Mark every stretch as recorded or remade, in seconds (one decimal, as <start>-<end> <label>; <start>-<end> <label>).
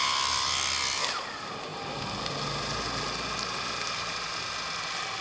0.0-5.2 recorded